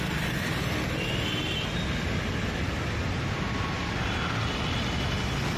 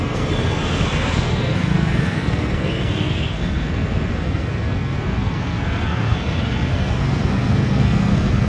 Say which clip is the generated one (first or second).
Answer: second